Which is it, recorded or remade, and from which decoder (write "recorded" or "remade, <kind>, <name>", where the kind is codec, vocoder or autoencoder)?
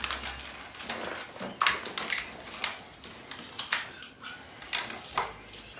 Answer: recorded